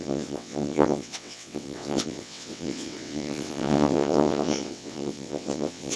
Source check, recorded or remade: remade